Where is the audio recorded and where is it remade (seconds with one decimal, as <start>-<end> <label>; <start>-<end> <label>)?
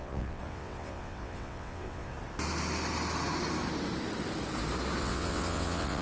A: 0.0-2.1 remade; 2.1-5.0 recorded; 5.0-6.0 remade